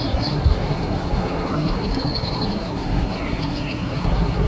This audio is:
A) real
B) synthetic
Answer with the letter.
B